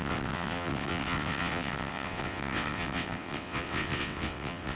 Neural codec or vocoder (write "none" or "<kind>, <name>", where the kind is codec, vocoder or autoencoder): vocoder, WaveNeXt